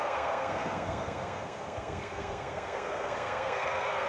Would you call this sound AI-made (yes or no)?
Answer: yes